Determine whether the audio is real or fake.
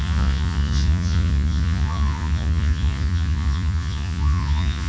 fake